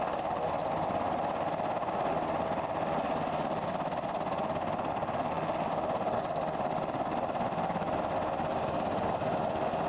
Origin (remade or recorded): recorded